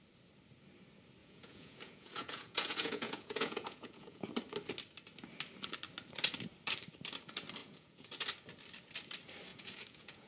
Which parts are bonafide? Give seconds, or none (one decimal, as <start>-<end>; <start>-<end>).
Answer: 0.0-1.2; 4.3-7.6; 8.1-9.5